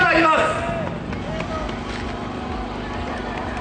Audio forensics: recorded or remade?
recorded